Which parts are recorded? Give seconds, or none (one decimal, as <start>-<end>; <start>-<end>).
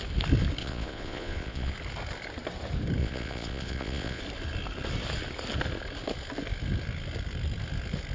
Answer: 0.0-0.6; 1.7-3.0; 4.2-8.1